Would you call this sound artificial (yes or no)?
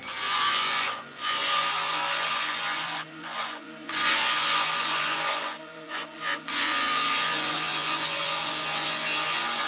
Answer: yes